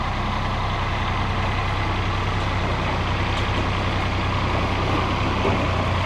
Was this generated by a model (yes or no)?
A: no